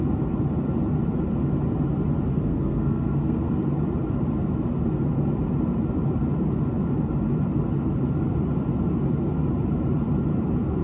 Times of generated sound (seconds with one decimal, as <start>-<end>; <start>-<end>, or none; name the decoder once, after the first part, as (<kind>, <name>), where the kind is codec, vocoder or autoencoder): 2.3-3.5 (codec, SNAC)